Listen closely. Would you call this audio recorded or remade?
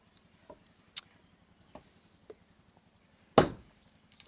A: recorded